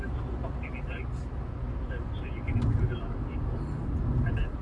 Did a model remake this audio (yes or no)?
no